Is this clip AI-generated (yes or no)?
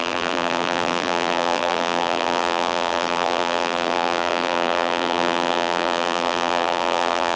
yes